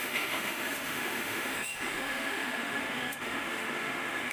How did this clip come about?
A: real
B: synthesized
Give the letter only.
B